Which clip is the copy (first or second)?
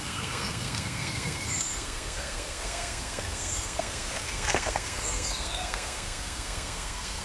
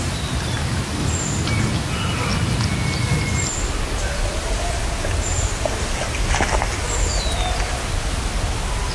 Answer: first